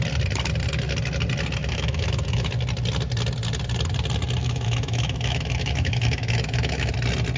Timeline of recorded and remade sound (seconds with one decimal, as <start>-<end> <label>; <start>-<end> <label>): 0.0-1.6 recorded; 1.6-2.5 remade; 2.5-4.4 recorded; 4.4-6.9 remade; 6.9-7.4 recorded